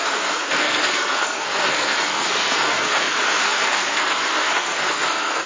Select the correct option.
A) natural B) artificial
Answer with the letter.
B